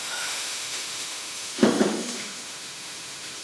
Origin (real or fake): fake